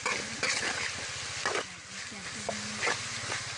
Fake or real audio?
real